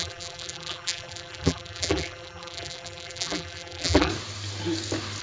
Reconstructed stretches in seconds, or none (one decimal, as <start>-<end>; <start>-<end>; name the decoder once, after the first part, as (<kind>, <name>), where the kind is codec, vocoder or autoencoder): 0.0-4.1 (vocoder, BigVGAN v2)